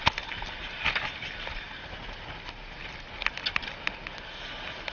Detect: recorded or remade recorded